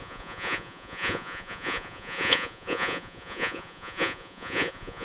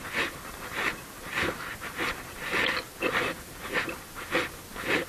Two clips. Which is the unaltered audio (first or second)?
second